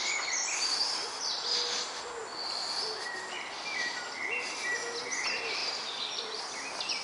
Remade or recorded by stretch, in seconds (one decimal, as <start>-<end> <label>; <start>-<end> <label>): 0.0-5.6 recorded; 5.6-6.4 remade; 6.4-7.0 recorded